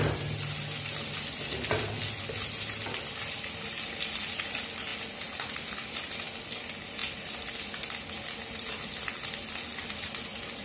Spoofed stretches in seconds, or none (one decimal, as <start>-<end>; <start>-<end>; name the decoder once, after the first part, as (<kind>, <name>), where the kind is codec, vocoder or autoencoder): none